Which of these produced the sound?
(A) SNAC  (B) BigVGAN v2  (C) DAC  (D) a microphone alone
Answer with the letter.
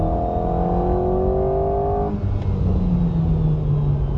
D